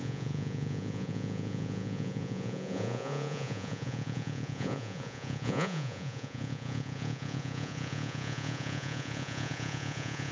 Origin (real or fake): fake